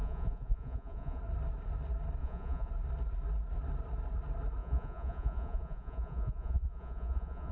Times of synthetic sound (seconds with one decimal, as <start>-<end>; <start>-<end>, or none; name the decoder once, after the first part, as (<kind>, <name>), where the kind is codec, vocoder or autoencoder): 0.0-1.2 (vocoder, Vocos); 2.2-2.7; 4.6-7.5